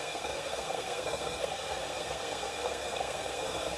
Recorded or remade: remade